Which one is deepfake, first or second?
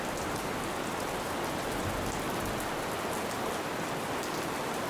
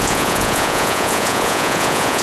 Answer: second